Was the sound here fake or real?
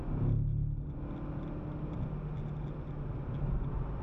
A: real